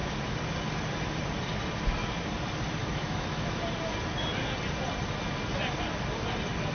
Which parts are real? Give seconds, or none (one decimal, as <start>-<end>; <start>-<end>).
0.0-2.8; 3.6-6.7

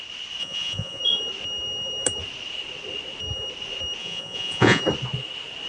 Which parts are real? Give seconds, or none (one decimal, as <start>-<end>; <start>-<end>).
0.0-0.4; 1.0-4.0; 4.8-5.7

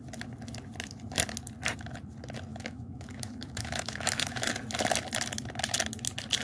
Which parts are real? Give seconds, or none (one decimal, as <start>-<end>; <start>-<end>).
0.0-2.5; 4.5-6.4

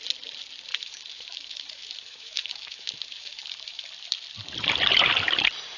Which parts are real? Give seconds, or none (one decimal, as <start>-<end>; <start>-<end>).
0.0-0.7; 3.9-5.8

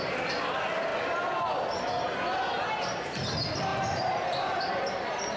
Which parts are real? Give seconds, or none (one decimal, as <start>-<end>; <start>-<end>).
0.0-3.7; 4.7-5.4

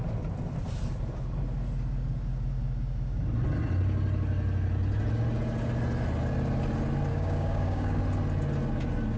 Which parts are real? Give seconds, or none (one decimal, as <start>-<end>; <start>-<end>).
0.0-7.1; 8.0-9.2